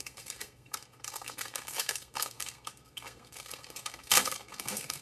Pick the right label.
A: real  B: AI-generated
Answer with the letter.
B